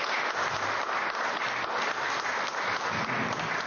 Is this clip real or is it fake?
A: real